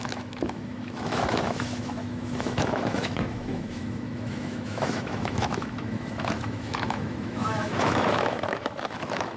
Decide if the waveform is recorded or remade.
remade